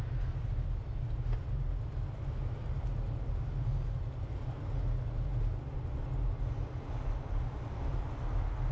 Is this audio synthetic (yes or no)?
no